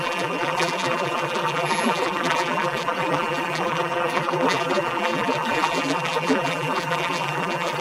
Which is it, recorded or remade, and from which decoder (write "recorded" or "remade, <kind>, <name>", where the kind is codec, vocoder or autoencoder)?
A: remade, vocoder, BigVGAN v2